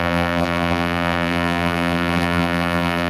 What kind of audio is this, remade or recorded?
remade